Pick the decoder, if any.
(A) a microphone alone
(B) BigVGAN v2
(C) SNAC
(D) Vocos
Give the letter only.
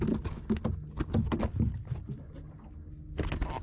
A